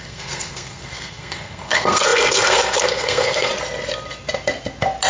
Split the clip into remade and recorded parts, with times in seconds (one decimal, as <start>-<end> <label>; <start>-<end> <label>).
0.0-3.5 remade; 3.5-5.1 recorded